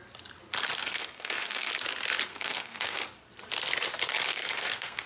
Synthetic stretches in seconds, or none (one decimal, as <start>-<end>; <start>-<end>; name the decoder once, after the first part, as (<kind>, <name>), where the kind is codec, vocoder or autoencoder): 0.8-1.7 (codec, SNAC); 2.3-3.0; 4.3-5.1